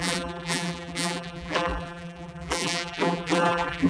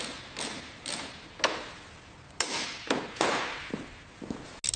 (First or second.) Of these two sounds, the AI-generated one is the first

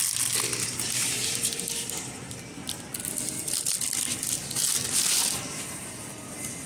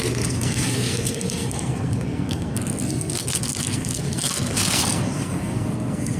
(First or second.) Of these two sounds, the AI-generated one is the second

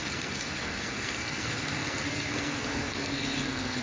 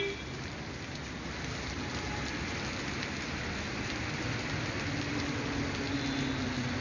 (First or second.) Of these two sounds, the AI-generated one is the first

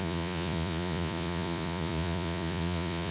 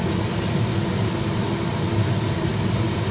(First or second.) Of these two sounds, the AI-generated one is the first